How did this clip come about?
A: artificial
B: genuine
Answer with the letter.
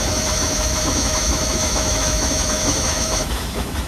A